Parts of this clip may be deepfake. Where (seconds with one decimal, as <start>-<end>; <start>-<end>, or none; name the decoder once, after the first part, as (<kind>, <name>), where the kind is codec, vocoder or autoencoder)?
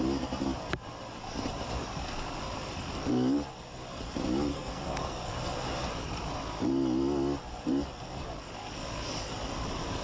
4.5-5.3 (codec, SNAC)